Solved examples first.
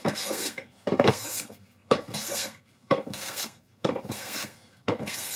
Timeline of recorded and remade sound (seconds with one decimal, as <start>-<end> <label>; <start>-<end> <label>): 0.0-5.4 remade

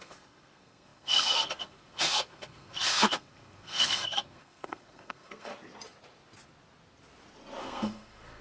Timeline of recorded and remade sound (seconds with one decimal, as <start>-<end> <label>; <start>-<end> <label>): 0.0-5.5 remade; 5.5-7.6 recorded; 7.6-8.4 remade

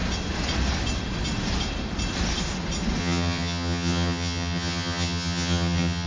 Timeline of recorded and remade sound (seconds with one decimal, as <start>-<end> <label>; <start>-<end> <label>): 0.0-3.0 recorded; 3.0-6.1 remade

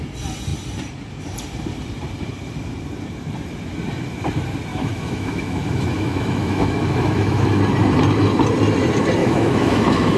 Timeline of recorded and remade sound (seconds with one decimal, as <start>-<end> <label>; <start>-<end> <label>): 0.0-4.7 recorded; 4.7-7.6 remade; 7.6-9.2 recorded; 9.2-10.2 remade

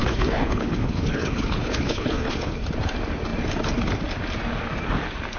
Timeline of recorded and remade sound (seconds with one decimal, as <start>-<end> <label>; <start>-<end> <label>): 0.0-2.6 remade; 2.6-5.4 recorded

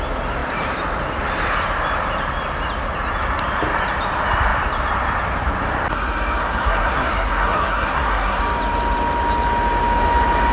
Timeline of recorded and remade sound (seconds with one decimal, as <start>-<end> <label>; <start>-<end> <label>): 0.0-6.4 recorded; 6.4-8.4 remade; 8.4-10.5 recorded

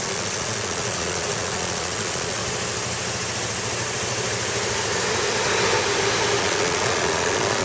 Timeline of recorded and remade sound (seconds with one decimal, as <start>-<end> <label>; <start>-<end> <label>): 0.0-2.4 remade; 2.4-6.4 recorded; 6.4-7.6 remade